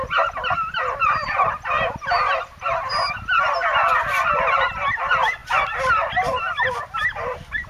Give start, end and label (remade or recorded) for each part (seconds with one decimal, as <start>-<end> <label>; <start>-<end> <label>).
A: 0.0-7.7 recorded